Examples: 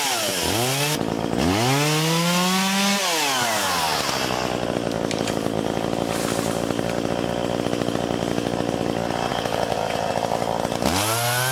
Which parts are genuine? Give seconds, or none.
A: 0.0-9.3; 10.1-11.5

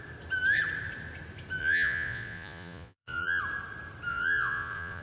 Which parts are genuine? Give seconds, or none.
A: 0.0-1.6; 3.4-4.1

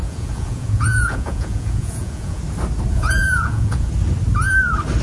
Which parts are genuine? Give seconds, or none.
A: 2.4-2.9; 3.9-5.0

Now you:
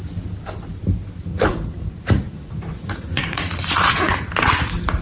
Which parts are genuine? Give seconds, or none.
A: 0.0-1.3; 4.3-5.0

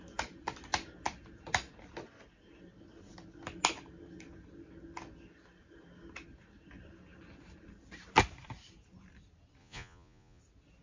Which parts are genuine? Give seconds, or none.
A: 0.0-9.6; 10.4-10.8

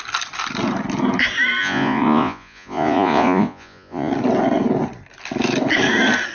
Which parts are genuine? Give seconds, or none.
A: 0.0-1.6; 4.1-6.3